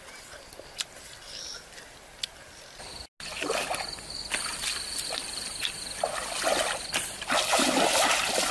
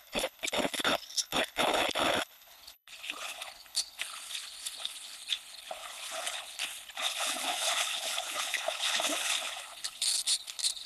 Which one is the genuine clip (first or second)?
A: first